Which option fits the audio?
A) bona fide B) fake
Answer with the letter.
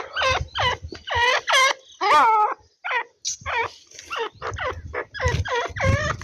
A